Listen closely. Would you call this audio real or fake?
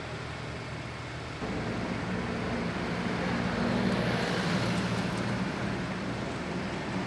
real